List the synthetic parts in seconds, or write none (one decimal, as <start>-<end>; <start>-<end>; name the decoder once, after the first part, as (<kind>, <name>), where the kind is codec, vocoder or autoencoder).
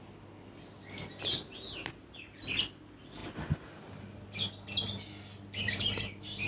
5.6-6.5 (vocoder, BigVGAN v2)